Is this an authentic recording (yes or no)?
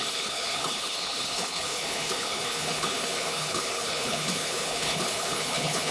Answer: no